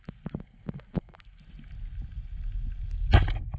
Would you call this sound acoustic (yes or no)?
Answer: yes